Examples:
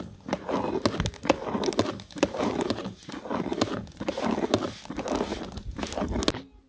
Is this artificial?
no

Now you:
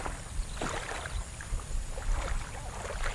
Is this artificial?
no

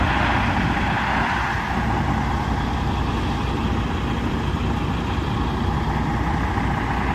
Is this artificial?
no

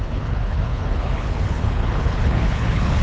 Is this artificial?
yes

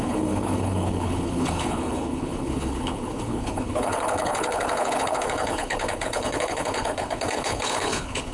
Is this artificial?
yes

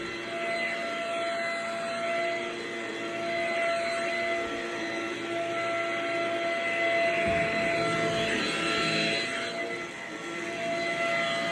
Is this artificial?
no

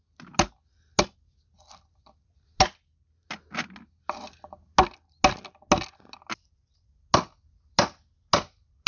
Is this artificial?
no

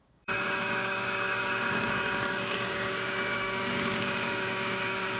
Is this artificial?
yes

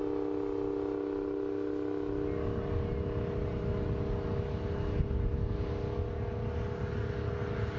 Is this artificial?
no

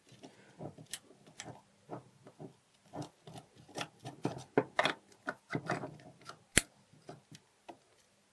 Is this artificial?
no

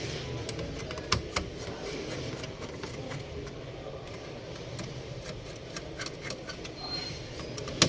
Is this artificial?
no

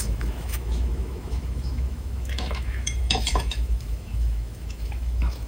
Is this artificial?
yes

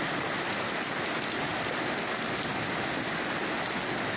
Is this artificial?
no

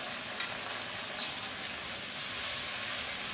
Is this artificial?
no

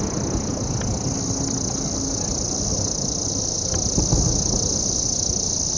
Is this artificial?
no